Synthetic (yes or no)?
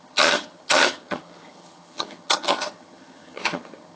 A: yes